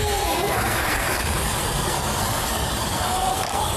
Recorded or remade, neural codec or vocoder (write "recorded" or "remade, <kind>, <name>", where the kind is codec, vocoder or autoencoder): remade, codec, SNAC